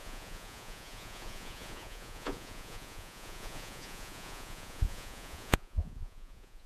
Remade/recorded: remade